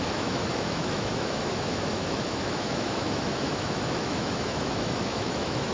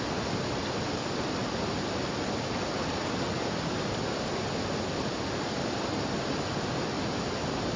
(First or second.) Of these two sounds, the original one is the second